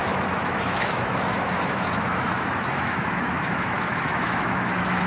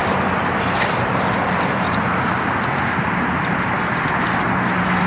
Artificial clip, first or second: first